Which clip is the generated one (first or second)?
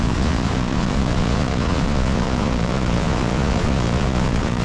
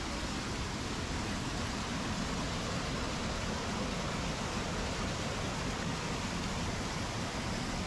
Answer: first